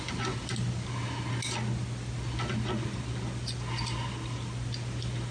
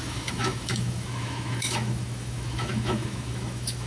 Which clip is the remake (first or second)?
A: second